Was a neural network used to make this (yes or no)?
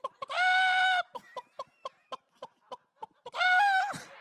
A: yes